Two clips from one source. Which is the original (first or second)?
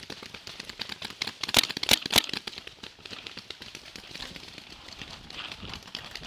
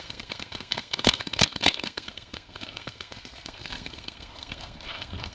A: first